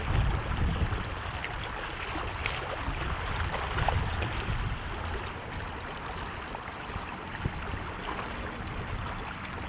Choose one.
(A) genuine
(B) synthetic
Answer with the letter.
A